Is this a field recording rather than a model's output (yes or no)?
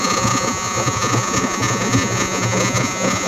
no